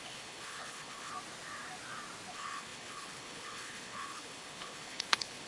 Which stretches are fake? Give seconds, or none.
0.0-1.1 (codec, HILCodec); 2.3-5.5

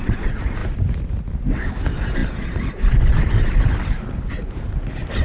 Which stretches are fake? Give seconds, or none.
none

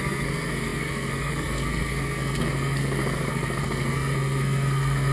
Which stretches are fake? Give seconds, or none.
0.0-5.1 (codec, SNAC)

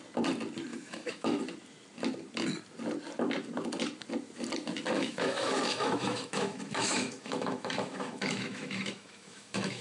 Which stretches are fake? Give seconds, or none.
0.7-1.4 (autoencoder, DAC-VAE); 5.0-9.8

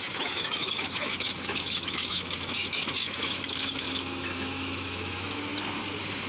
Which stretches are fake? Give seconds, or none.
0.0-5.5 (autoencoder, DAC-VAE)

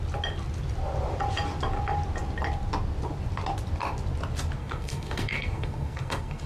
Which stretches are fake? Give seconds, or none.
4.6-6.5 (codec, SNAC)

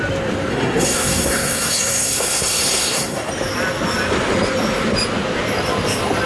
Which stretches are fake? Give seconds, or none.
0.5-3.3 (codec, SNAC)

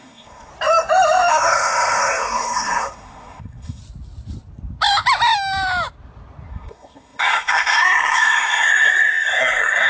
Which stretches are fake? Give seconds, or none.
0.0-0.5 (codec, SNAC); 1.3-3.8; 6.5-9.9